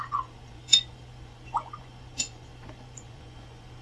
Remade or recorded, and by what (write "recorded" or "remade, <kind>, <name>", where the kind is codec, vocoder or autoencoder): remade, vocoder, Vocos